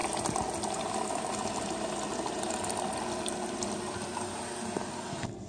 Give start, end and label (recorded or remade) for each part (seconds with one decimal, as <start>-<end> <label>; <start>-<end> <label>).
0.0-5.5 recorded